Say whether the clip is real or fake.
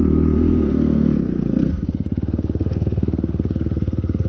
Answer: fake